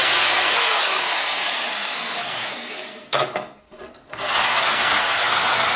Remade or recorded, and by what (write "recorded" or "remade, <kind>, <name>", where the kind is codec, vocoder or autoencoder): remade, codec, SNAC